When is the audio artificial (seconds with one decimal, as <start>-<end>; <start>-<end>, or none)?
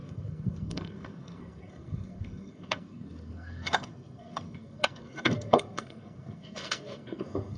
0.0-7.6